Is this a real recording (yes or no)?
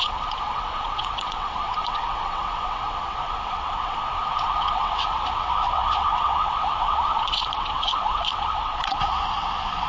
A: no